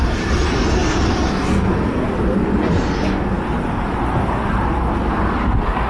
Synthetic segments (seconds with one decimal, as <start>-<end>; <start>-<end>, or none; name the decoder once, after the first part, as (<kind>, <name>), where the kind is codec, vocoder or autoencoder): 0.0-0.8 (vocoder, BigVGAN v2); 3.5-5.9